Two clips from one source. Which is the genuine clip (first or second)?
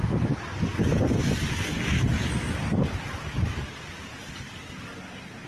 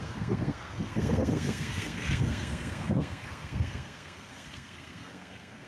first